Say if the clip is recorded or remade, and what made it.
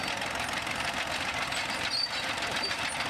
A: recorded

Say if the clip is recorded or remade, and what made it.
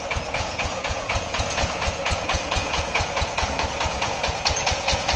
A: remade, vocoder, Vocos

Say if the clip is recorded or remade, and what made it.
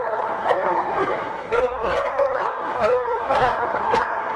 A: remade, codec, SNAC